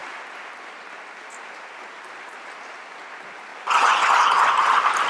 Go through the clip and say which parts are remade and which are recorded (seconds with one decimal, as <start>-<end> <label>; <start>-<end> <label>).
0.0-3.5 recorded; 3.5-4.5 remade; 4.5-5.1 recorded